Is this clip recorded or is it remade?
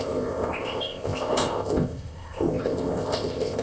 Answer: remade